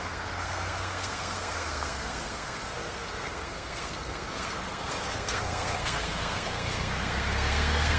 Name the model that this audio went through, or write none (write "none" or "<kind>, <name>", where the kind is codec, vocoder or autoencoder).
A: codec, SNAC